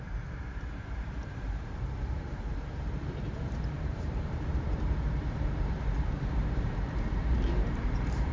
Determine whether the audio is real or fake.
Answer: fake